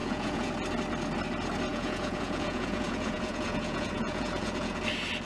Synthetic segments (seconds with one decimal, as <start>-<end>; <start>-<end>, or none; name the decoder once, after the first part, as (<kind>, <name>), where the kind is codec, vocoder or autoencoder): 0.0-0.5 (vocoder, Vocos); 1.7-4.8